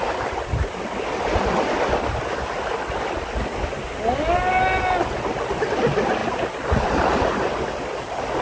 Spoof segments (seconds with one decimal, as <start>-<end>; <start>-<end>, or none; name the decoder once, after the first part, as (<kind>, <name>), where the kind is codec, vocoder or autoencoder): none